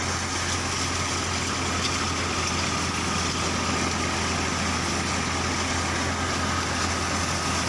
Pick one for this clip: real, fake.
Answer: real